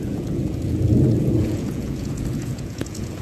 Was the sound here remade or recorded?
remade